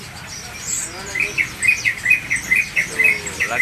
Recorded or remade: recorded